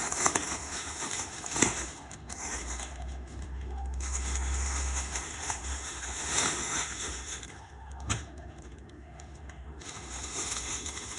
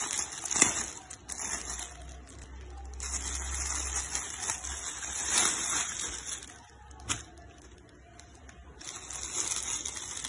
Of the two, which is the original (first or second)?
second